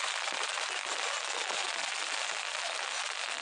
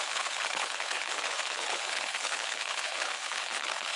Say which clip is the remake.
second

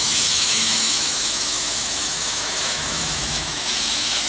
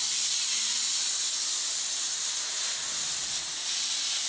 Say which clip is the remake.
first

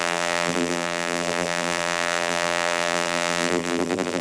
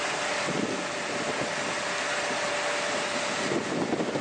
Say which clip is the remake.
first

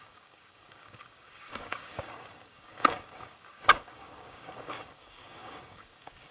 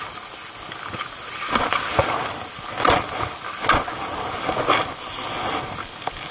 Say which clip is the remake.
first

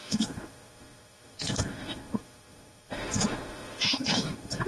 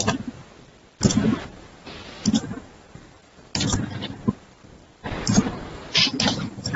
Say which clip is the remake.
first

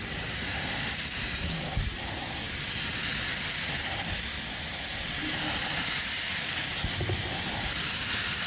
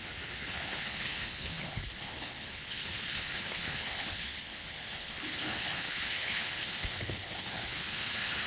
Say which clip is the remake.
second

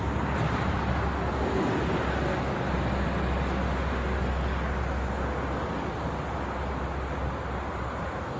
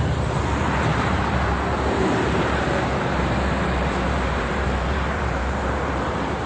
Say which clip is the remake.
second